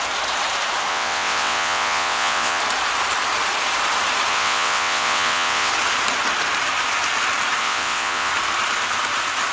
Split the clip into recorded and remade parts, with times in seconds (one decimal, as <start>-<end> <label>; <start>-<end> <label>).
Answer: 0.0-0.9 recorded; 0.9-2.6 remade; 2.6-4.3 recorded; 4.3-5.7 remade; 5.7-7.6 recorded; 7.6-8.3 remade; 8.3-9.5 recorded